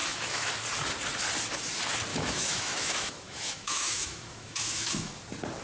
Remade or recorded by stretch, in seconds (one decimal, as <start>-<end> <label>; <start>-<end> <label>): 0.0-0.5 remade; 0.5-2.1 recorded; 2.1-5.1 remade; 5.1-5.6 recorded